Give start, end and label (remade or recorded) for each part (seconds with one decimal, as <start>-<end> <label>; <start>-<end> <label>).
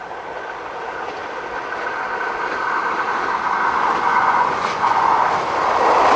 0.0-4.1 recorded; 4.1-5.2 remade; 5.2-6.2 recorded